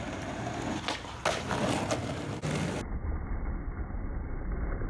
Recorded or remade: recorded